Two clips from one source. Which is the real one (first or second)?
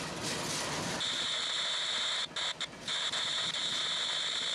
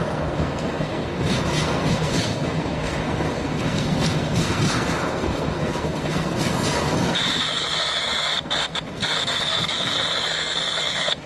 first